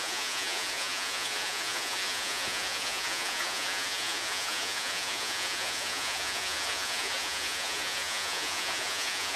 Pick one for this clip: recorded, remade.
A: remade